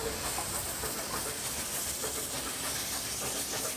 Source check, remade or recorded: recorded